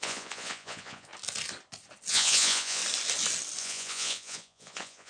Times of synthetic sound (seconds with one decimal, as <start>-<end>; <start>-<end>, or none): 0.0-1.1; 2.1-2.8; 3.6-5.1